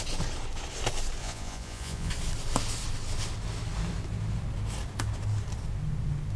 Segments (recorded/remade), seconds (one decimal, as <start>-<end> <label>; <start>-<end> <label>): 0.0-1.2 recorded; 1.2-2.1 remade; 2.1-6.4 recorded